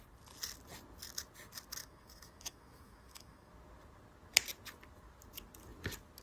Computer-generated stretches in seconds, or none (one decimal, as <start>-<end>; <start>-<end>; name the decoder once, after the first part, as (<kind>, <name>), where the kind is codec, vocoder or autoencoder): 1.8-3.5 (autoencoder, DAC-VAE)